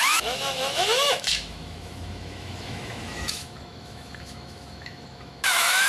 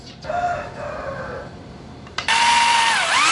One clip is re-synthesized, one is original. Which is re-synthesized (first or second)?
first